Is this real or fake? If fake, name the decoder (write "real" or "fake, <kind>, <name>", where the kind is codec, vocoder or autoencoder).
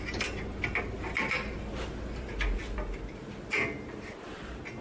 real